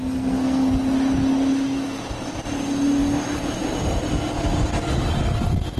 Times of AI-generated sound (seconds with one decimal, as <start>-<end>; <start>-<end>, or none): 0.0-0.7

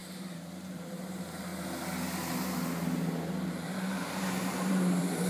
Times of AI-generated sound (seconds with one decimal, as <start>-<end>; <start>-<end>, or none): 0.0-1.5; 3.5-5.3

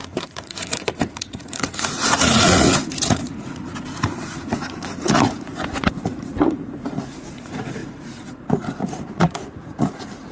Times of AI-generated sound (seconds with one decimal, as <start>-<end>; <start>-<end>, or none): 0.0-3.7; 4.2-10.3